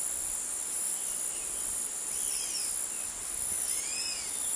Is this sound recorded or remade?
recorded